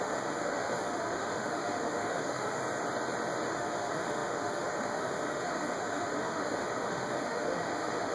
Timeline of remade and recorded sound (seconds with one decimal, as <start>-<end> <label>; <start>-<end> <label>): 0.0-2.6 remade; 2.6-3.5 recorded; 3.5-8.1 remade